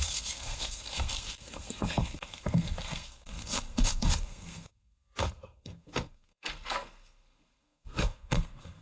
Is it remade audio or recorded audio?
remade